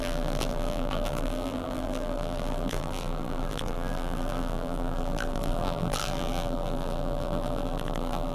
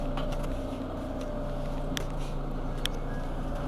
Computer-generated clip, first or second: first